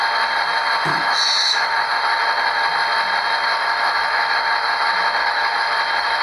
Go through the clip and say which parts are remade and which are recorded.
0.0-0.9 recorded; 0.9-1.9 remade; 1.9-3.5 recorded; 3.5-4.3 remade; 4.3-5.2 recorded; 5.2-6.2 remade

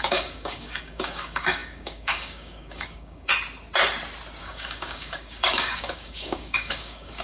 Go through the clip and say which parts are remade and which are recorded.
0.0-3.3 remade; 3.3-4.4 recorded; 4.4-7.2 remade

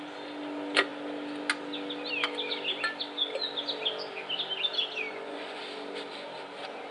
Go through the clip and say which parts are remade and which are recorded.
0.0-5.1 recorded; 5.1-5.6 remade; 5.6-6.9 recorded

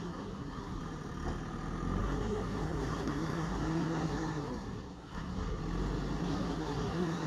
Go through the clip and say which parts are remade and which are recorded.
0.0-0.8 remade; 0.8-2.0 recorded; 2.0-5.6 remade; 5.6-6.2 recorded; 6.2-7.3 remade

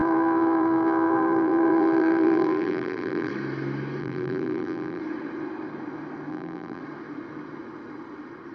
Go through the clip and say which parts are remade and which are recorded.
0.0-3.3 remade; 3.3-4.0 recorded; 4.0-5.0 remade; 5.0-6.3 recorded; 6.3-6.8 remade; 6.8-8.5 recorded

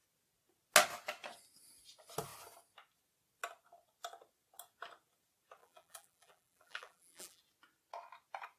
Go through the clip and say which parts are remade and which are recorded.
0.0-5.6 recorded; 5.6-7.4 remade; 7.4-8.6 recorded